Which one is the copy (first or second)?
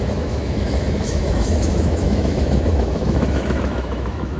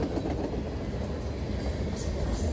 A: first